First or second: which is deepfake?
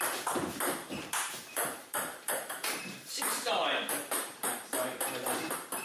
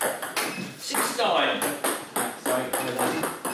first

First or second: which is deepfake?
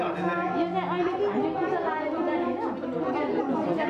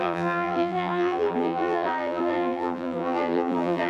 second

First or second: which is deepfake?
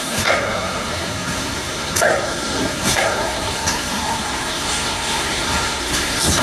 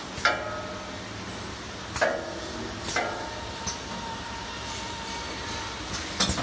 first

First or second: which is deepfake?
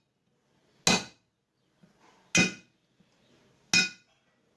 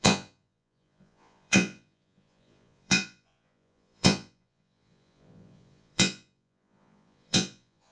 second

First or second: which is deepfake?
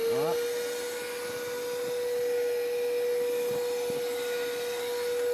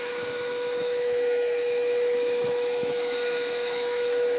second